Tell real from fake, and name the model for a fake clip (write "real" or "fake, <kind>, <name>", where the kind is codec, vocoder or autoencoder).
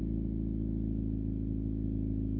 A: real